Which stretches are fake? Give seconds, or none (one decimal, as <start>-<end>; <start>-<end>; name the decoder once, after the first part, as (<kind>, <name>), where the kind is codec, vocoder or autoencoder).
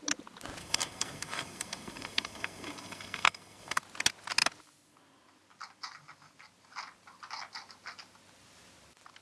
0.6-3.8 (codec, SNAC)